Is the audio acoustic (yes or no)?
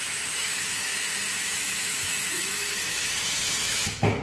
no